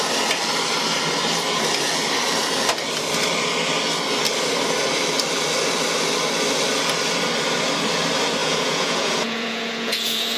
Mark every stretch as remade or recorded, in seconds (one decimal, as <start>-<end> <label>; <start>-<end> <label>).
0.0-8.4 recorded; 8.4-10.4 remade